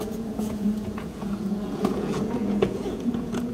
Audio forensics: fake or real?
fake